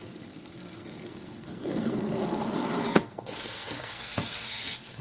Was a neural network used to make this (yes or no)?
yes